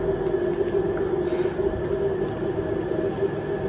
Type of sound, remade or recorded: recorded